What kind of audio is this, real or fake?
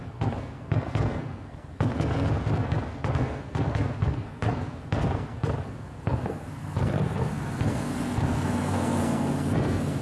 fake